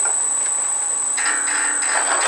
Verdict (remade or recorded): recorded